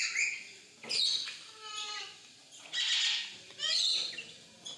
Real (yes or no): yes